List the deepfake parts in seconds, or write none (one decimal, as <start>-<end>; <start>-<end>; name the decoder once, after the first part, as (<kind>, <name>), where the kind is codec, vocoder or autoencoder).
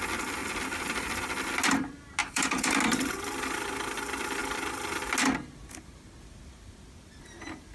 0.4-1.2 (vocoder, BigVGAN v2); 2.2-2.8